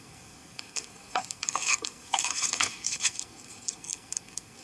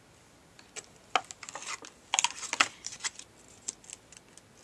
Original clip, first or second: second